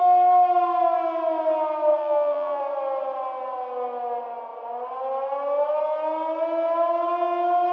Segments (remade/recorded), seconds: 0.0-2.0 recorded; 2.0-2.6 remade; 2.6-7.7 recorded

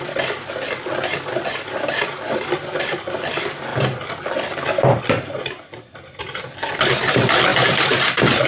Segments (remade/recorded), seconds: 0.0-3.7 remade; 3.7-5.0 recorded; 5.0-8.5 remade

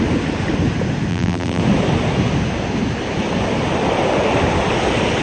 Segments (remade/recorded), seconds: 0.0-1.1 recorded; 1.1-1.6 remade; 1.6-5.2 recorded

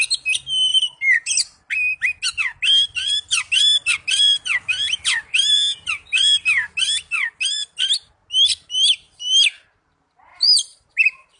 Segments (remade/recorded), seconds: 0.0-0.7 recorded; 0.7-1.3 remade; 1.3-10.3 recorded; 10.3-10.9 remade; 10.9-11.4 recorded

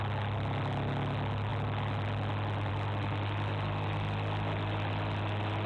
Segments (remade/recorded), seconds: 0.0-5.7 recorded